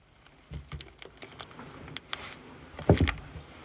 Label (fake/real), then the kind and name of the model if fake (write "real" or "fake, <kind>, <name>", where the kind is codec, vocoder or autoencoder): real